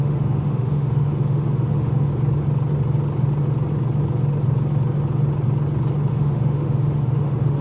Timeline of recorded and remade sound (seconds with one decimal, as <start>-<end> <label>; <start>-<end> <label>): 0.0-2.1 remade; 2.1-6.1 recorded; 6.1-7.6 remade